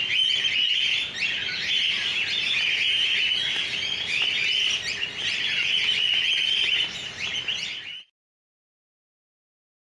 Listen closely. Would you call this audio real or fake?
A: real